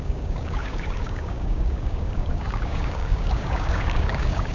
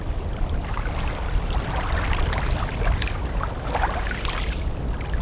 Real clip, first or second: second